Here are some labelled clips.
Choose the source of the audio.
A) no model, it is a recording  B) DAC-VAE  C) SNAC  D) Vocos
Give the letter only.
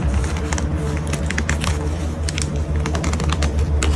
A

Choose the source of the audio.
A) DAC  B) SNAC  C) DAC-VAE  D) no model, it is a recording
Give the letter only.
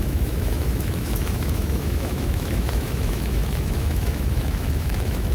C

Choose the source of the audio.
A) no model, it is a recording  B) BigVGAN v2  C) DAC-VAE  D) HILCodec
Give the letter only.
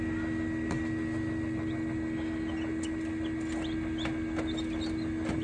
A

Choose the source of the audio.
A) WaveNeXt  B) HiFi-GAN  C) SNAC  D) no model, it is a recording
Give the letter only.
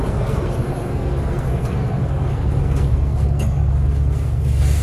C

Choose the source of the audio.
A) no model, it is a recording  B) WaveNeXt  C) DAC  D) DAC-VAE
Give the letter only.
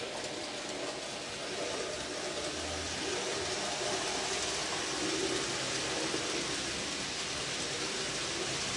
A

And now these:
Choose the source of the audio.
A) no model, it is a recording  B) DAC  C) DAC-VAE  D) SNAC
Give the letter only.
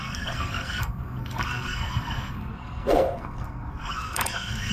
D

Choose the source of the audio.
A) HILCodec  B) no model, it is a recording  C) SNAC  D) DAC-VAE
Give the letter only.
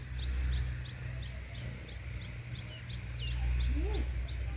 B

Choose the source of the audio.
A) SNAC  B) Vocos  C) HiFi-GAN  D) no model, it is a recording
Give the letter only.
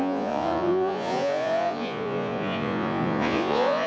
B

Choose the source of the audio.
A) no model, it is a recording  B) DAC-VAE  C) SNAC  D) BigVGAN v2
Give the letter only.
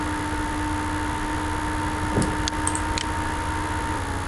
A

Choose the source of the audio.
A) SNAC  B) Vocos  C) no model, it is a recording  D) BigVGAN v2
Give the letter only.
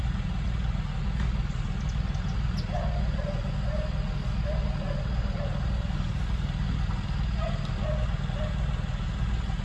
C